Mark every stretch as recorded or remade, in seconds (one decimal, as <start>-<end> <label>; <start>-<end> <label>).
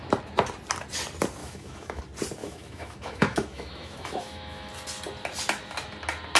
0.0-1.4 recorded; 1.4-2.0 remade; 2.0-2.4 recorded; 2.4-4.7 remade; 4.7-6.4 recorded